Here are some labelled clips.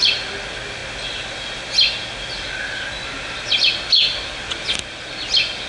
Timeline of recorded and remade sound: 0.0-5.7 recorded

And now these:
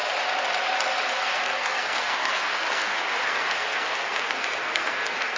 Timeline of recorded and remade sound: 0.0-1.1 recorded; 1.1-5.4 remade